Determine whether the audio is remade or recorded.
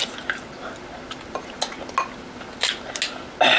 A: recorded